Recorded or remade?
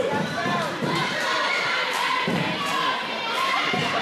remade